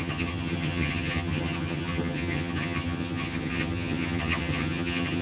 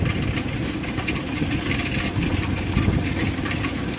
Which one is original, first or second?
second